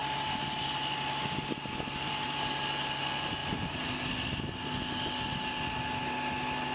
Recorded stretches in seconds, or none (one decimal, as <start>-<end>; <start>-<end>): 0.0-6.7